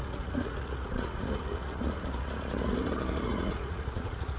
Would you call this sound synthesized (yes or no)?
yes